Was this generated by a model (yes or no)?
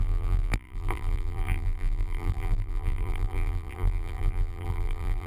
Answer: yes